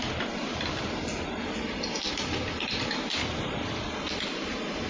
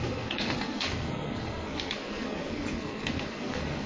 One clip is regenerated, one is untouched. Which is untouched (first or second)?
first